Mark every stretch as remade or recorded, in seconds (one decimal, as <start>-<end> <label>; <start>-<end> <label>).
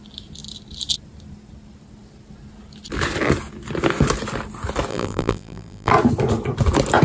0.0-4.9 recorded; 4.9-5.9 remade; 5.9-7.0 recorded